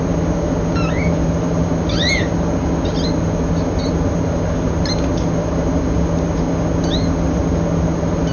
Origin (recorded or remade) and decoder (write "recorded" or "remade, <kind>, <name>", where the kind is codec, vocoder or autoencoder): recorded